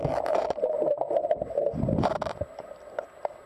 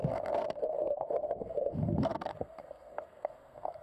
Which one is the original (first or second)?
first